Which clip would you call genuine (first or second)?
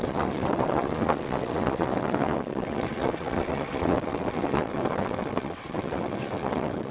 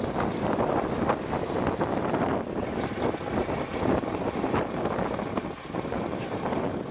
second